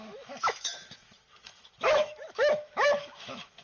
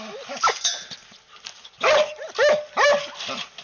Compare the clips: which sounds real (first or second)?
second